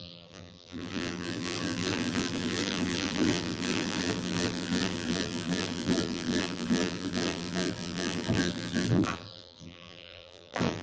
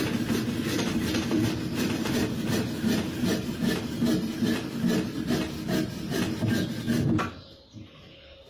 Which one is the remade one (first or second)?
first